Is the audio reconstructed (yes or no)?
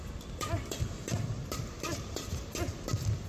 no